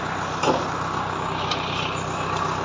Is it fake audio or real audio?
real